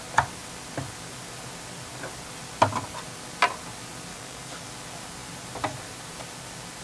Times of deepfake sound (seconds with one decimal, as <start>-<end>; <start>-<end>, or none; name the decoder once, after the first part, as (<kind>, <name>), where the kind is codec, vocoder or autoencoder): 4.1-4.7 (codec, DAC)

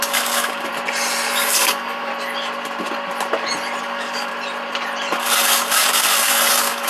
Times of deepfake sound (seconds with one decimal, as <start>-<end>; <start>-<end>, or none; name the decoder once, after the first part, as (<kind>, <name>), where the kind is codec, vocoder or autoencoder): 0.0-0.7 (codec, DAC); 1.4-2.1; 3.8-4.3; 5.1-6.9

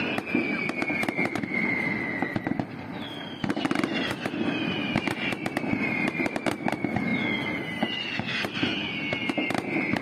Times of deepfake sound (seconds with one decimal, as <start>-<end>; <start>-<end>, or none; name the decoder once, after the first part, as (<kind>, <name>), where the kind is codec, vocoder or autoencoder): none